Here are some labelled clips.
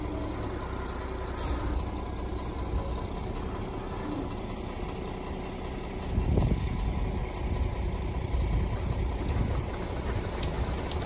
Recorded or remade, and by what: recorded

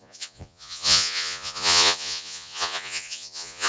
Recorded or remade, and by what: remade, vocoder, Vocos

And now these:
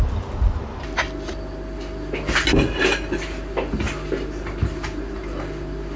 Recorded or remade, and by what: recorded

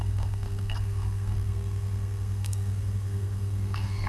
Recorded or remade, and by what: remade, codec, SNAC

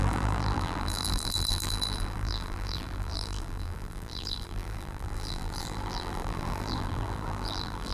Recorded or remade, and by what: remade, vocoder, BigVGAN v2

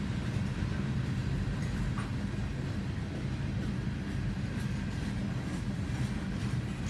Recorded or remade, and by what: recorded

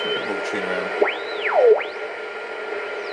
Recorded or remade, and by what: recorded